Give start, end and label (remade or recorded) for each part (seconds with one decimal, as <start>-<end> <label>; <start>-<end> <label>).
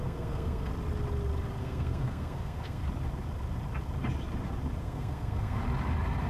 0.0-0.7 remade; 0.7-1.6 recorded; 1.6-2.8 remade; 2.8-4.8 recorded; 4.8-5.6 remade; 5.6-6.3 recorded